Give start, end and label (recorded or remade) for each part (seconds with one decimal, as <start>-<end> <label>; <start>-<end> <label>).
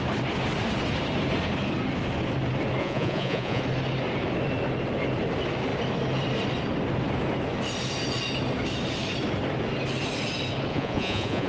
0.0-2.8 recorded; 2.8-3.6 remade; 3.6-10.7 recorded; 10.7-11.5 remade